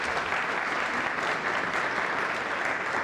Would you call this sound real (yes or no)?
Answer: yes